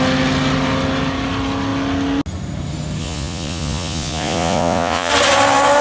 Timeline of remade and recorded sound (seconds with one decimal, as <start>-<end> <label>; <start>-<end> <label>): 0.0-3.0 recorded; 3.0-5.1 remade; 5.1-5.8 recorded

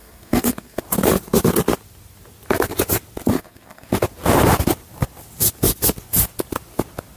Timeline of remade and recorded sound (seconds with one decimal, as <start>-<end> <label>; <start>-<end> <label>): 0.0-0.8 remade; 0.8-3.3 recorded; 3.3-3.9 remade; 3.9-7.2 recorded

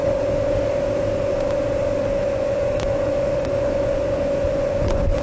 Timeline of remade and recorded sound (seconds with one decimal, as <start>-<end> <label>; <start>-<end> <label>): 0.0-2.1 recorded; 2.1-5.2 remade

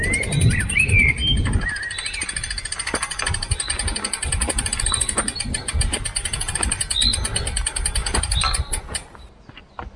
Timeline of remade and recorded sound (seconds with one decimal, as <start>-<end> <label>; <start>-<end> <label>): 0.0-10.0 recorded

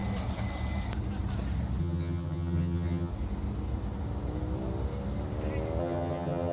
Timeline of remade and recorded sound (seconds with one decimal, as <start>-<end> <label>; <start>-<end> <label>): 0.0-1.8 recorded; 1.8-3.1 remade; 3.1-5.8 recorded; 5.8-6.5 remade

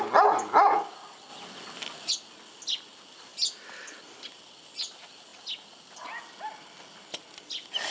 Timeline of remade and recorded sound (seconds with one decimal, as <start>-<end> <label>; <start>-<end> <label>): 0.0-7.9 recorded

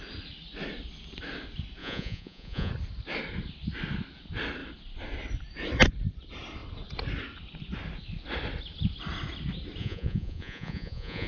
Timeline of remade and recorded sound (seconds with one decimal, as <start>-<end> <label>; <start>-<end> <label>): 0.0-1.8 recorded; 1.8-2.7 remade; 2.7-9.8 recorded; 9.8-11.3 remade

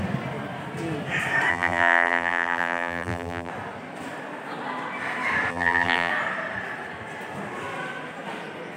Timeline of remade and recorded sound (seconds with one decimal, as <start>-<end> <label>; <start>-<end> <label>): 0.0-1.5 recorded; 1.5-3.5 remade; 3.5-5.5 recorded; 5.5-6.1 remade; 6.1-8.8 recorded